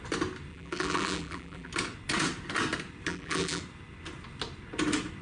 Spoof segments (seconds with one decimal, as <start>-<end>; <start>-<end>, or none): 0.5-1.7; 3.1-3.6